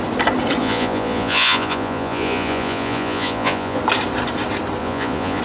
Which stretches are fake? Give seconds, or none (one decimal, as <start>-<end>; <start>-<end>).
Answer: 0.6-3.8; 4.8-5.4